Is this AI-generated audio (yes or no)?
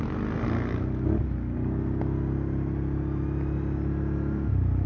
no